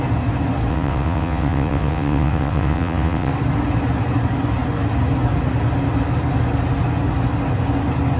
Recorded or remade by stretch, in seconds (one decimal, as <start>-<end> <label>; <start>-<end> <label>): 0.0-0.7 recorded; 0.7-3.3 remade; 3.3-8.2 recorded